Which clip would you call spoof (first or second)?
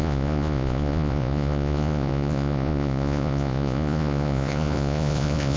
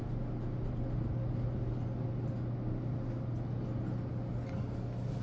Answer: first